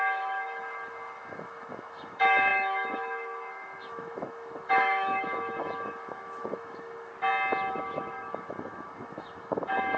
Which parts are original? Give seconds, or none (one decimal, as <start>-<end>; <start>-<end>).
7.1-7.7